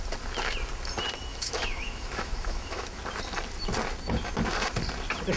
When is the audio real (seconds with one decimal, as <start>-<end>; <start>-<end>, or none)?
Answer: 0.0-1.3; 3.0-5.4